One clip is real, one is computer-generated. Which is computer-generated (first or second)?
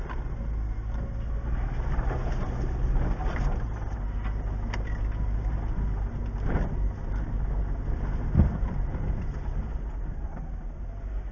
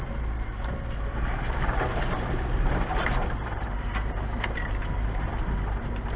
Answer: second